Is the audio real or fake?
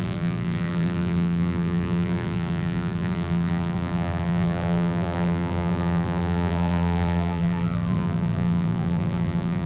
fake